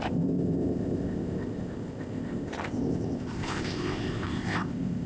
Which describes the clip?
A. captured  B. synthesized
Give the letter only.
B